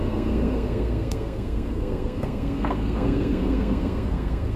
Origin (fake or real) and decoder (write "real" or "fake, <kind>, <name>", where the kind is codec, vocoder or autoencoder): fake, codec, SNAC